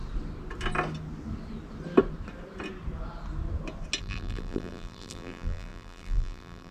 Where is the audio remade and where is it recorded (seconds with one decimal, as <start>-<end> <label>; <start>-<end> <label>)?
0.0-4.0 recorded; 4.0-6.7 remade